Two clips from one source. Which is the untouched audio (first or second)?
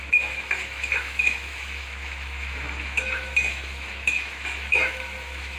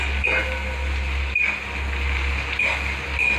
second